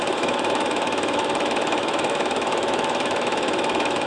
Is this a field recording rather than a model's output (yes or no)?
no